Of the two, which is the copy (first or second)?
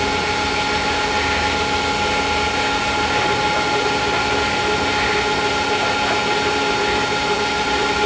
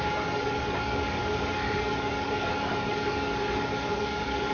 second